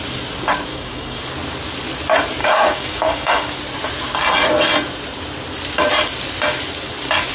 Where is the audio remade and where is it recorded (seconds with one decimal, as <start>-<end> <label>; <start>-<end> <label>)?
0.0-0.7 recorded; 0.7-1.2 remade; 1.2-2.4 recorded; 2.4-3.5 remade; 3.5-7.3 recorded